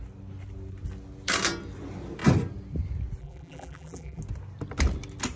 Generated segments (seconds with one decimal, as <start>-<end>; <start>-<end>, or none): 3.2-4.2